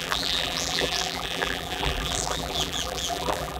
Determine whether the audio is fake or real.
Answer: fake